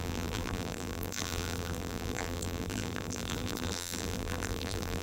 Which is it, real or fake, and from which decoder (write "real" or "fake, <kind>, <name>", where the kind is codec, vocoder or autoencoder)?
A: fake, vocoder, BigVGAN v2